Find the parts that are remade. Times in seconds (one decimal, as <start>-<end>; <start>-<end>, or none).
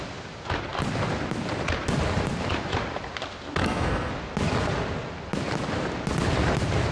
3.6-4.1